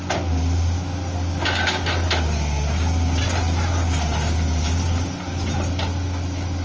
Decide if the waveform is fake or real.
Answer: real